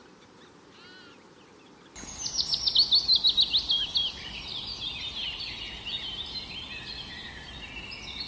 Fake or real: real